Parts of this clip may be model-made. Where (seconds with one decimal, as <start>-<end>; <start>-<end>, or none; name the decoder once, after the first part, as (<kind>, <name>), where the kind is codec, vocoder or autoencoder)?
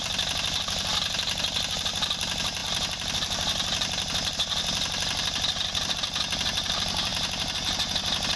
0.0-7.1 (vocoder, BigVGAN v2)